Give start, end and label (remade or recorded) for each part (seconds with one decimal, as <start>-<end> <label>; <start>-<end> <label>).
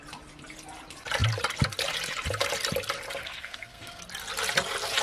0.0-3.2 recorded; 3.2-4.0 remade; 4.0-5.0 recorded